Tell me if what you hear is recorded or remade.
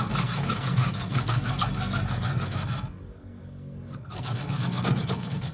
remade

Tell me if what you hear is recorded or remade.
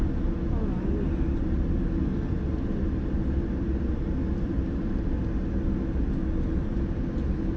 recorded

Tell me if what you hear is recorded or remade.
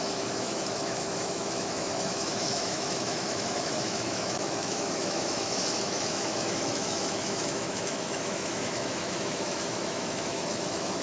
remade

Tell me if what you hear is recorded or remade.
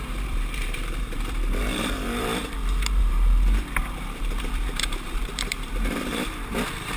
remade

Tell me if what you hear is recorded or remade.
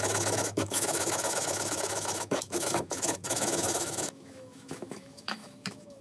remade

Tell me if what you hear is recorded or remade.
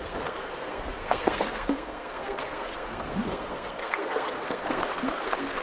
remade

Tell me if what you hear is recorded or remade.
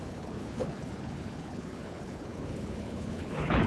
remade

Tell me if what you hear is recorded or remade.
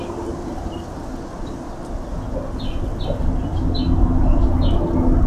recorded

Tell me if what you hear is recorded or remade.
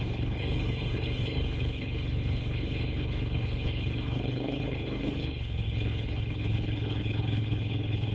remade